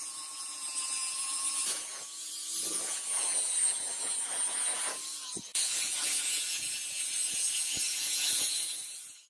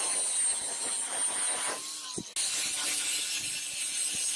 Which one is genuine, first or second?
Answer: second